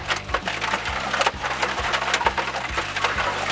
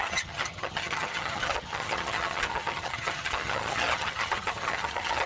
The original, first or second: first